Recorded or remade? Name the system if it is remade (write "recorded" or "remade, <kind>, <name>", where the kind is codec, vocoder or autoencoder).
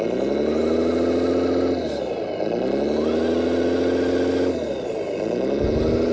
recorded